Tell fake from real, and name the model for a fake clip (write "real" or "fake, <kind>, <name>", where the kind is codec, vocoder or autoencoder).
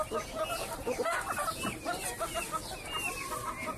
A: real